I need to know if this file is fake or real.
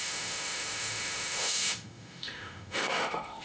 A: fake